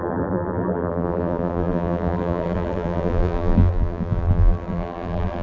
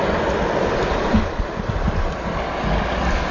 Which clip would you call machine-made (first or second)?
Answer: first